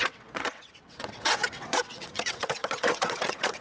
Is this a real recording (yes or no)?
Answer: no